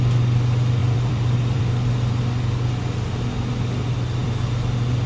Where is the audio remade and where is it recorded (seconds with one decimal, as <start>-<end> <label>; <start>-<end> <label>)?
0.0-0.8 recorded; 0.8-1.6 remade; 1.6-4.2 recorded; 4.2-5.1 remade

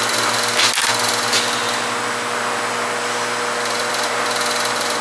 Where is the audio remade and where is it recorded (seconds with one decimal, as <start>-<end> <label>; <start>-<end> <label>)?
0.0-5.0 recorded

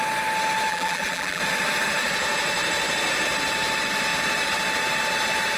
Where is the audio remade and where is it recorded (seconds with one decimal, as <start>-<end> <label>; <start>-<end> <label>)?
0.0-0.7 recorded; 0.7-1.4 remade; 1.4-5.6 recorded